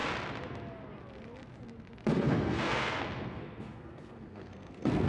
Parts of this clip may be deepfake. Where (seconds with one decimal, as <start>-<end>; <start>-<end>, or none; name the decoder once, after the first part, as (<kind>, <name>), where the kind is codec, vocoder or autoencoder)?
2.1-5.1 (codec, SNAC)